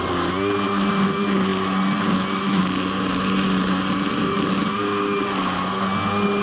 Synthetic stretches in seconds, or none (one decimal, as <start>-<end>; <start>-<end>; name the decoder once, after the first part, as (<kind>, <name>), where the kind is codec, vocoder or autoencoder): none